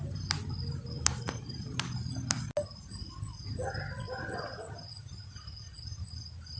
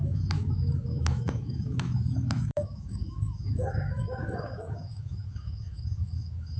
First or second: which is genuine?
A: first